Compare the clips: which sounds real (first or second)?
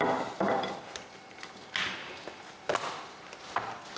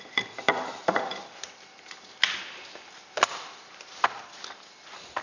first